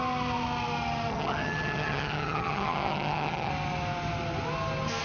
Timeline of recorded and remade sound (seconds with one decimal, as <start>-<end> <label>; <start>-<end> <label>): 0.0-1.1 recorded; 1.1-3.5 remade; 3.5-5.0 recorded